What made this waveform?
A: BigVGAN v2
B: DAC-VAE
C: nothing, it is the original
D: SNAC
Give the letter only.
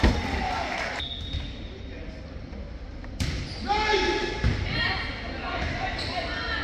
C